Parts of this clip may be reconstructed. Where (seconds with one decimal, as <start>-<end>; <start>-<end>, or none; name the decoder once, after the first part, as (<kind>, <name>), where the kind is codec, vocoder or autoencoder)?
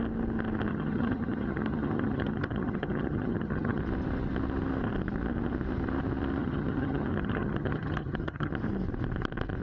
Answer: 0.7-3.8 (vocoder, HiFi-GAN); 6.4-8.5